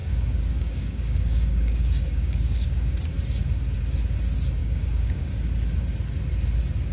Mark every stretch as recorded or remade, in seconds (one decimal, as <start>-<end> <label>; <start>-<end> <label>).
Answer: 0.0-3.0 remade; 3.0-4.6 recorded; 4.6-5.3 remade; 5.3-6.9 recorded